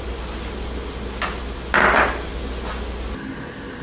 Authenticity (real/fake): real